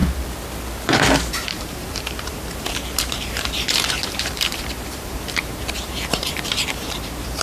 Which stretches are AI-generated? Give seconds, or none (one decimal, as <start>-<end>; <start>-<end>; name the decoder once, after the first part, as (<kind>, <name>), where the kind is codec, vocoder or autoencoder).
1.3-7.4 (vocoder, BigVGAN v2)